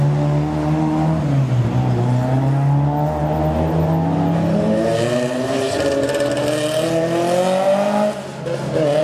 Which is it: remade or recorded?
recorded